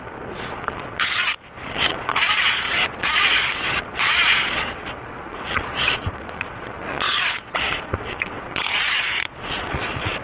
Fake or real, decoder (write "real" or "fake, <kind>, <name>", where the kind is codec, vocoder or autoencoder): fake, vocoder, Vocos